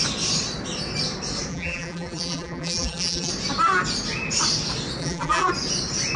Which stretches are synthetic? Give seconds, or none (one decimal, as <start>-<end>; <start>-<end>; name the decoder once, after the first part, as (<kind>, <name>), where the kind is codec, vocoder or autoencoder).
1.5-3.3 (vocoder, BigVGAN v2); 5.0-5.5